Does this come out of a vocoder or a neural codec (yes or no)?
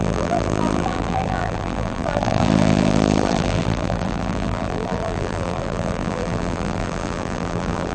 yes